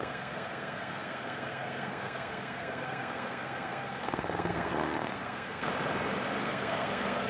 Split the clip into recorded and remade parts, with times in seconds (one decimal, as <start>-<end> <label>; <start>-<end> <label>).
0.0-5.7 remade; 5.7-6.4 recorded; 6.4-7.3 remade